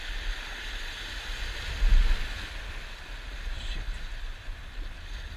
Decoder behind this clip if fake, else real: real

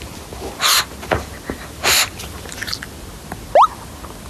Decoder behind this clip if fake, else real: real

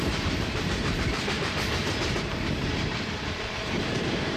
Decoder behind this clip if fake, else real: fake, vocoder, BigVGAN v2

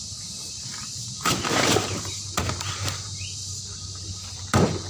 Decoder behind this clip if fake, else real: fake, vocoder, BigVGAN v2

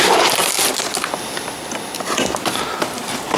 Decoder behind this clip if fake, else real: real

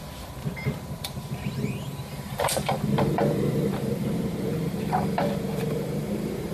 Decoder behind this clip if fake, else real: fake, vocoder, BigVGAN v2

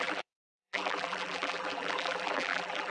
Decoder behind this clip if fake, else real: fake, vocoder, BigVGAN v2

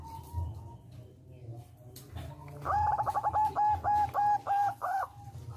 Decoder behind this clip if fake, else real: real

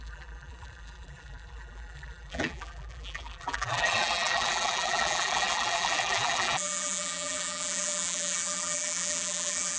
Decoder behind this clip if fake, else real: fake, vocoder, BigVGAN v2